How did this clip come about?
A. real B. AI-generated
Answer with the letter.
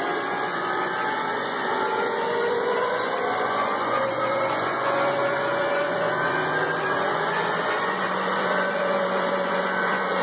B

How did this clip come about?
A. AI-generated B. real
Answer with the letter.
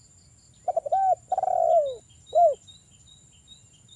B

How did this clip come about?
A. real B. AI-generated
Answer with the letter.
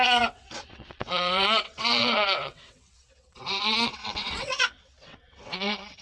B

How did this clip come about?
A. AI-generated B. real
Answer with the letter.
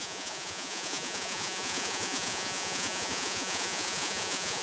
A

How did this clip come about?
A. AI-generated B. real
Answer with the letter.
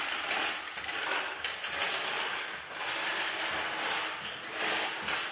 B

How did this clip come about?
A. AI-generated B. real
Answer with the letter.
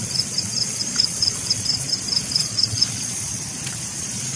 A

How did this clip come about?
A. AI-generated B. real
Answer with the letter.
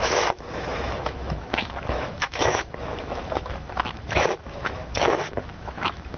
A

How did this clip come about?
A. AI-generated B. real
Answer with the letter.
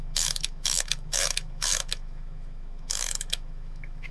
A